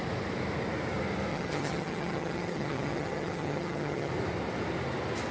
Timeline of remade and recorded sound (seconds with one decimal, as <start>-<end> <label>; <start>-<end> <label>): 0.0-1.3 recorded; 1.3-4.1 remade; 4.1-5.3 recorded